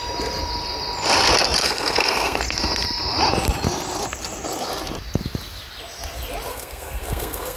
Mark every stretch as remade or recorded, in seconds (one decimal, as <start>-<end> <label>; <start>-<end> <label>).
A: 0.0-1.6 recorded; 1.6-2.4 remade; 2.4-6.5 recorded; 6.5-7.6 remade